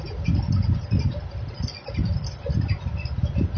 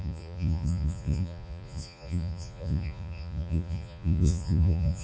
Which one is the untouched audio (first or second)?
first